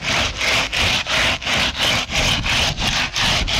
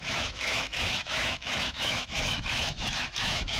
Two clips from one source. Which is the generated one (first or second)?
second